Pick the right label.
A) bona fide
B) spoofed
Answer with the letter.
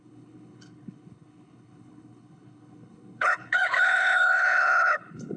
B